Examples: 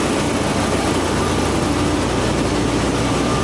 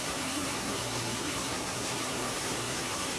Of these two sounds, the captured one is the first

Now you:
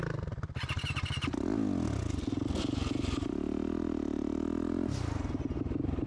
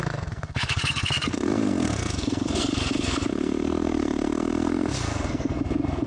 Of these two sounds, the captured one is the first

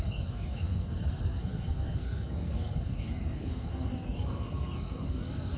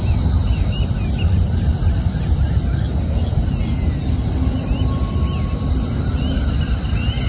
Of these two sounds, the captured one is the second